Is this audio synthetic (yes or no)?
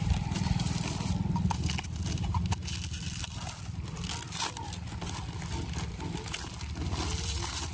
no